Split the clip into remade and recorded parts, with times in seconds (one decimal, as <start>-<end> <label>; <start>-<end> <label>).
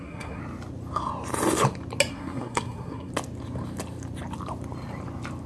0.0-0.4 remade; 0.4-2.1 recorded; 2.1-3.1 remade; 3.1-5.5 recorded